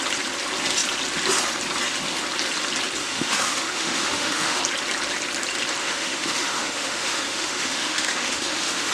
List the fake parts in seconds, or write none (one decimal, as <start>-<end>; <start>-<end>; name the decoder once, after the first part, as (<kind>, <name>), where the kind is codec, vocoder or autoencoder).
3.0-4.6 (autoencoder, DAC-VAE); 5.8-8.9

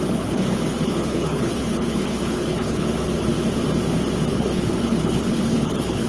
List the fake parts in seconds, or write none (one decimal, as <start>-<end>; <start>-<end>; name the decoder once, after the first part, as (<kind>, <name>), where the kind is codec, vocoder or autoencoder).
0.0-3.3 (codec, HILCodec); 4.3-6.1

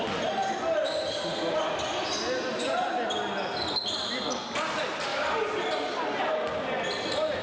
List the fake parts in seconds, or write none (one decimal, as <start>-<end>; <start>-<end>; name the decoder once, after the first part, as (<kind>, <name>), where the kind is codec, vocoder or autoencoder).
5.1-6.0 (vocoder, BigVGAN v2)

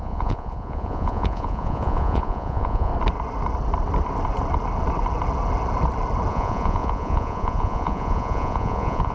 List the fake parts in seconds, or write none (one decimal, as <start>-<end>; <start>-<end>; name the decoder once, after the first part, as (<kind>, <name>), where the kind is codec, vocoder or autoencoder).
0.0-2.9 (vocoder, Vocos); 6.3-9.1

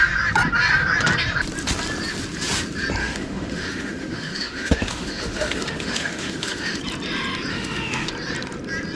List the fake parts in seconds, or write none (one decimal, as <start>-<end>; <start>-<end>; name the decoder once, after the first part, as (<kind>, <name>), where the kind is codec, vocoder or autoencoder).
3.0-6.8 (autoencoder, DAC-VAE); 7.5-8.1